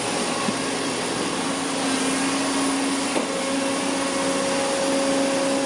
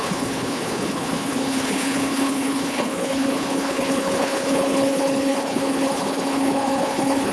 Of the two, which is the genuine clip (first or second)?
first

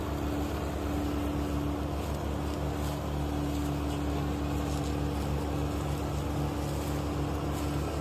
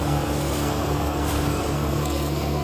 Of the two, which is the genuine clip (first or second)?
first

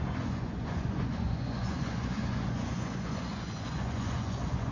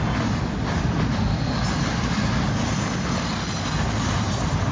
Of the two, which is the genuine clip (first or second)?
second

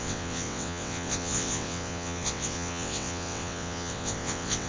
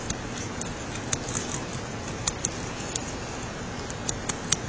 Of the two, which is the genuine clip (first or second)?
second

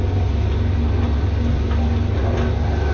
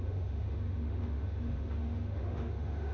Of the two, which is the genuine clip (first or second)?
first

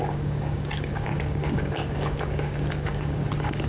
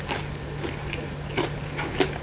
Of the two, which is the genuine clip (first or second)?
second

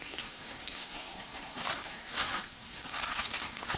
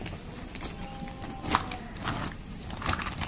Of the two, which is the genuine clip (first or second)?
second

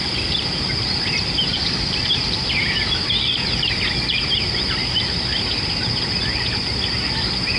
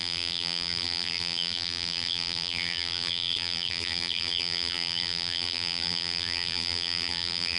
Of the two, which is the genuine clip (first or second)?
first